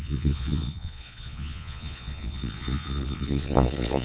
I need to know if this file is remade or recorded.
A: remade